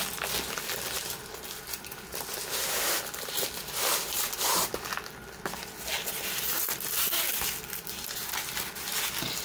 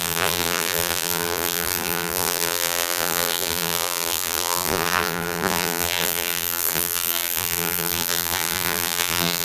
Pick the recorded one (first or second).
first